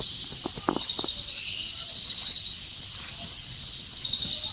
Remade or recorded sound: recorded